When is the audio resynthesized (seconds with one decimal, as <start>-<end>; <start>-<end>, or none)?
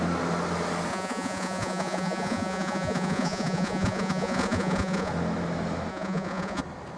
0.9-5.1; 5.9-6.6